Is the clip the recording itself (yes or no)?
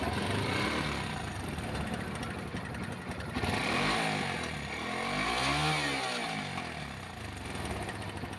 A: yes